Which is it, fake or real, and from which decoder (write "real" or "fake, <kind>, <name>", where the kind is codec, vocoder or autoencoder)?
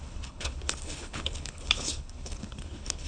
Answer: fake, codec, HILCodec